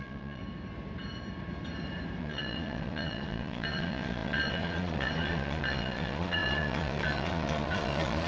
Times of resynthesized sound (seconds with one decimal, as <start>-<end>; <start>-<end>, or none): 0.0-0.4; 2.2-8.3